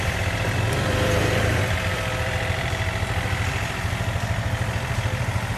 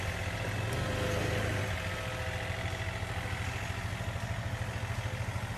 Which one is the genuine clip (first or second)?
second